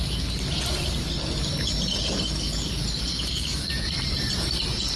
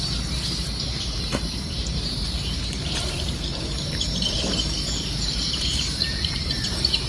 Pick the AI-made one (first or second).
second